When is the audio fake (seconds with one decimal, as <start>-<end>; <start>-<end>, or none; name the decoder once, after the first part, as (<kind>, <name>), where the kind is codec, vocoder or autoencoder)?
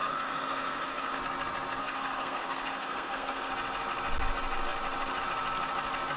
0.0-1.2 (codec, SNAC); 1.8-3.5